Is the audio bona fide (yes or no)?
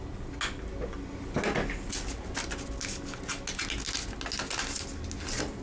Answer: yes